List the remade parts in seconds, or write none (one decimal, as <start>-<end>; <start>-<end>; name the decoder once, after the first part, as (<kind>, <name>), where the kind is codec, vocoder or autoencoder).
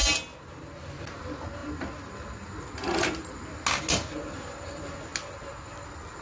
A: none